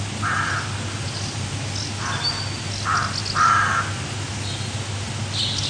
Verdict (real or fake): real